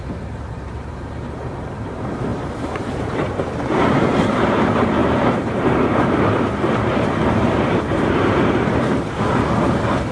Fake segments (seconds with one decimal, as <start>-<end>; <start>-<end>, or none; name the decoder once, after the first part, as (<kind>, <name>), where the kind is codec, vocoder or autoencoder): 0.0-10.1 (vocoder, BigVGAN v2)